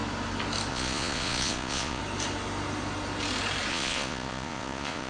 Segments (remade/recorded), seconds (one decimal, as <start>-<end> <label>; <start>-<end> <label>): 0.0-0.7 recorded; 0.7-2.0 remade; 2.0-3.7 recorded; 3.7-5.1 remade